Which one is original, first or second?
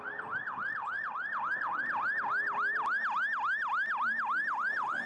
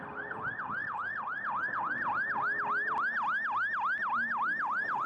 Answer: second